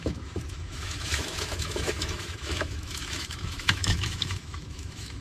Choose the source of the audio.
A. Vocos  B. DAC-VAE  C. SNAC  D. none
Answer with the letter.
B